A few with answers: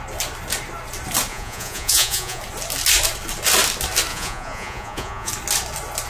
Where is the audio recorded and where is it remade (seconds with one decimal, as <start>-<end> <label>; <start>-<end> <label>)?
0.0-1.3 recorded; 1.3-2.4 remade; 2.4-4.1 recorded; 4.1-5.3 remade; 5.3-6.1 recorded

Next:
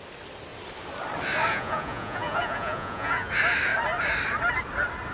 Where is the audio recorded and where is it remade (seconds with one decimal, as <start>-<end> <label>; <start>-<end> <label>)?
0.0-1.5 recorded; 1.5-3.3 remade; 3.3-5.1 recorded

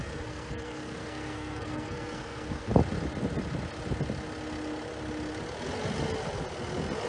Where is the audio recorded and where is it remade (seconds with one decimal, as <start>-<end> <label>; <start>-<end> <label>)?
0.0-2.7 remade; 2.7-7.1 recorded